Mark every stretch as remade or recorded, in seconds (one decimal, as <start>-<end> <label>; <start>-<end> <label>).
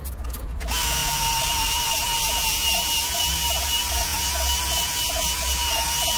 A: 0.0-1.0 recorded; 1.0-1.9 remade; 1.9-6.2 recorded